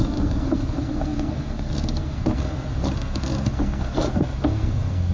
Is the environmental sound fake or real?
fake